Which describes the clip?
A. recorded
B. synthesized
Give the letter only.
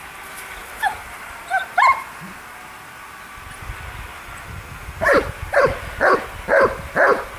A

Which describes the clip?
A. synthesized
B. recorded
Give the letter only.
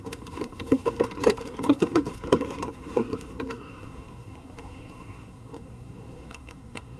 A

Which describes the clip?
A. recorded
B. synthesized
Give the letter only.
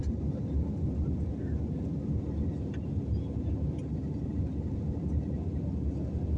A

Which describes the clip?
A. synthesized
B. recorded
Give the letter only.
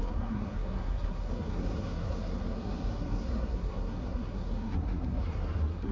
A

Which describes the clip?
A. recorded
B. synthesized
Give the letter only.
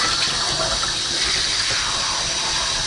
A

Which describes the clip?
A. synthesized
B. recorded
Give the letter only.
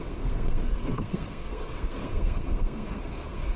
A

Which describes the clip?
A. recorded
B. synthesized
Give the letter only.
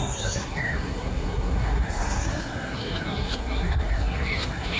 B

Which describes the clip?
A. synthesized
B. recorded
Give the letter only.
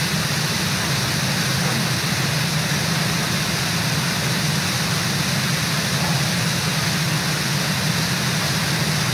B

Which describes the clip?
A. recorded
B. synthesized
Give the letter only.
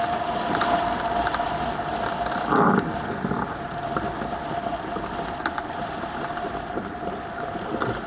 A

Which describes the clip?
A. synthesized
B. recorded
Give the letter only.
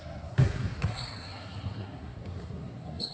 A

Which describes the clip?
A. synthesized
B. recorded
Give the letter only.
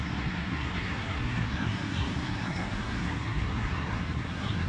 A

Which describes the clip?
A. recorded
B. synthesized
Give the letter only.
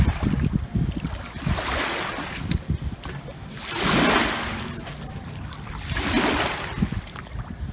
A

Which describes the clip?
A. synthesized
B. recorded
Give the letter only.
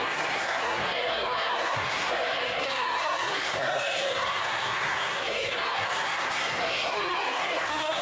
A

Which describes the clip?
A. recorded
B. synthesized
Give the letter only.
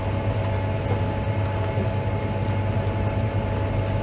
A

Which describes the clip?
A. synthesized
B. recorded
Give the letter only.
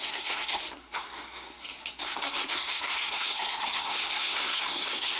A